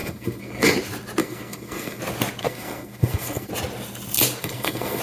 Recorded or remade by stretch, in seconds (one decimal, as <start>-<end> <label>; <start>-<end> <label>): 0.0-0.7 remade; 0.7-1.2 recorded; 1.2-2.0 remade; 2.0-2.4 recorded; 2.4-3.5 remade; 3.5-4.4 recorded; 4.4-5.0 remade